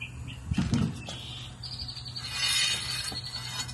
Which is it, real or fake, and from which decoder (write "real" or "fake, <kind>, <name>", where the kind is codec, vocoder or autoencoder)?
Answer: real